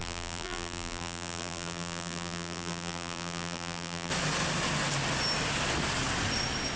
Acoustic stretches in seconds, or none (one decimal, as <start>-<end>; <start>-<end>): 4.1-6.8